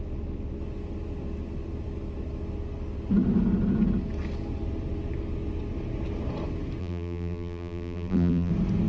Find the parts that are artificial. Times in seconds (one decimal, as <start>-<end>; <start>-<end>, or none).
6.8-8.5